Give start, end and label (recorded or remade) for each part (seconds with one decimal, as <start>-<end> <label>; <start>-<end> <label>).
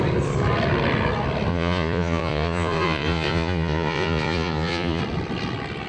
0.0-1.5 recorded; 1.5-5.0 remade; 5.0-5.9 recorded